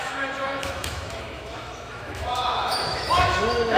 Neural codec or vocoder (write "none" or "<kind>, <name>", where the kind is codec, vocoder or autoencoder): autoencoder, DAC-VAE